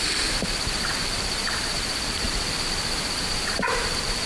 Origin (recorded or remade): remade